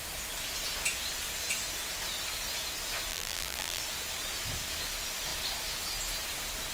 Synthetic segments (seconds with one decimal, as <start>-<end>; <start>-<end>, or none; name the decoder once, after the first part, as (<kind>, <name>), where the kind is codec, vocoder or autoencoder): 3.1-3.8 (vocoder, BigVGAN v2)